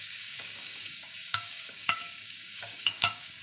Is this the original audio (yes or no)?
no